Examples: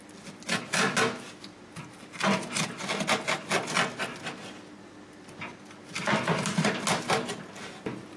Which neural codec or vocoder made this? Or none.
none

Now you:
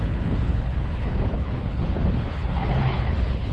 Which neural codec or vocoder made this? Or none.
codec, HILCodec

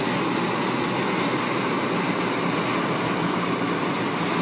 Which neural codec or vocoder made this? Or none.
none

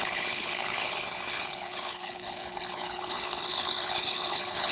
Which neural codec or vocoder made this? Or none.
codec, HILCodec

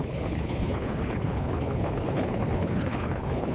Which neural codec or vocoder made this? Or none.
codec, HILCodec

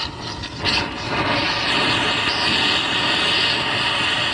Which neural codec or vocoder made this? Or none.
none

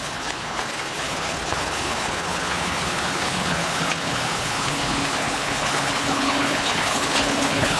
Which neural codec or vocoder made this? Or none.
codec, HILCodec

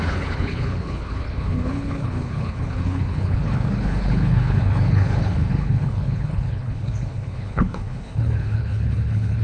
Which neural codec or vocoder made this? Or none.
codec, HILCodec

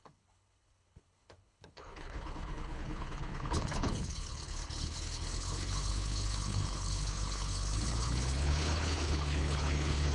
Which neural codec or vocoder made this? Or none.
codec, HILCodec